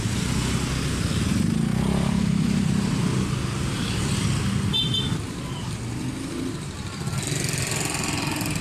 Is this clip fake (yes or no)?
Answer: no